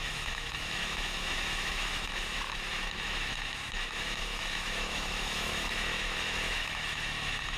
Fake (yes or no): yes